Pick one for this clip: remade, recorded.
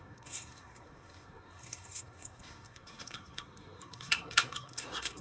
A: remade